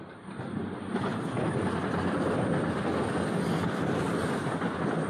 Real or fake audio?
real